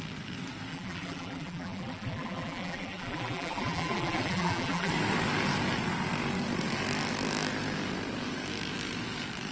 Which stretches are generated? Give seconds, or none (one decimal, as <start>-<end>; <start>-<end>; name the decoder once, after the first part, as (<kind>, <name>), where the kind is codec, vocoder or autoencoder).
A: 0.7-4.9 (vocoder, BigVGAN v2)